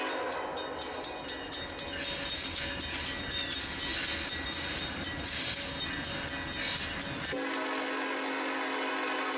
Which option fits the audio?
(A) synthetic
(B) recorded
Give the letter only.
B